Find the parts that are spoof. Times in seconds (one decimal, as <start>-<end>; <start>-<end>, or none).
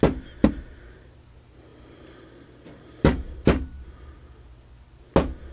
1.7-5.0